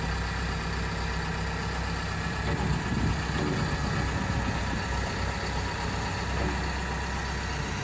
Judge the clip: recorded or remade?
recorded